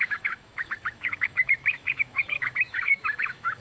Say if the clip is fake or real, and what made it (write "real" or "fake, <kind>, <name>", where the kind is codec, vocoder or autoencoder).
fake, autoencoder, DAC-VAE